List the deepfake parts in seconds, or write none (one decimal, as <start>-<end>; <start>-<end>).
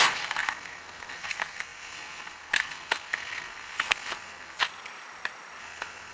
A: 0.0-4.7; 5.6-6.1